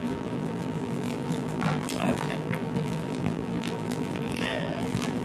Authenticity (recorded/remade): remade